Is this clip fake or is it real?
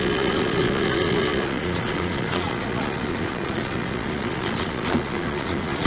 fake